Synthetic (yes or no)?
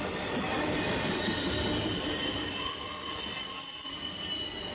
no